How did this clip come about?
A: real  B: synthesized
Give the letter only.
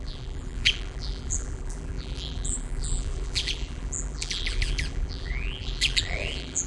B